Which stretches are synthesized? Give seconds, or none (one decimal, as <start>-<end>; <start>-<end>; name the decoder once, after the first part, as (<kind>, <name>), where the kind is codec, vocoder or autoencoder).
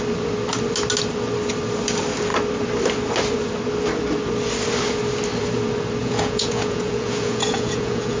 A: 6.0-8.2 (vocoder, Vocos)